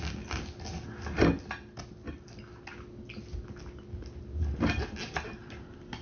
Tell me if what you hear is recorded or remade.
recorded